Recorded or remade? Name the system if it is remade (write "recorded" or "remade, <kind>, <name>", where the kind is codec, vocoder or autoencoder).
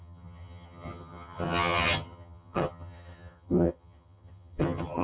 remade, vocoder, HiFi-GAN